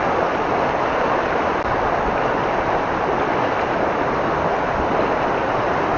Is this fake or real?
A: real